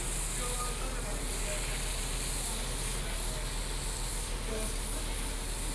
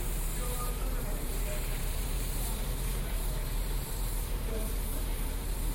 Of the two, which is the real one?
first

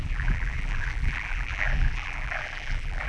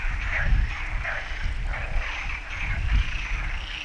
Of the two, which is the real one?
second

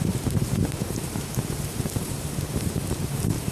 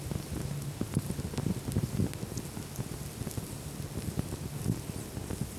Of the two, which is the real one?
second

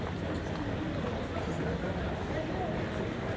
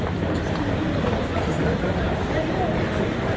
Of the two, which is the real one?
first